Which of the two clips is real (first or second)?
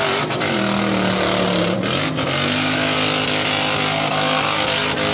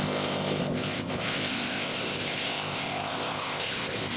first